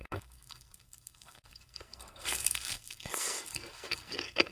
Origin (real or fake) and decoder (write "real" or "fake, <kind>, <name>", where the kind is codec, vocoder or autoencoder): fake, codec, SNAC